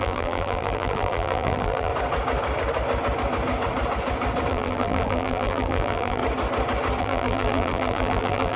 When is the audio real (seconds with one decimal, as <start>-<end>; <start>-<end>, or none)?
1.9-4.5; 6.2-7.0